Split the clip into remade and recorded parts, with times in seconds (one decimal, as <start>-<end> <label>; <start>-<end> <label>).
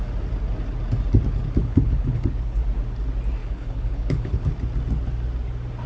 0.0-1.6 recorded; 1.6-2.6 remade; 2.6-3.4 recorded; 3.4-4.5 remade; 4.5-5.9 recorded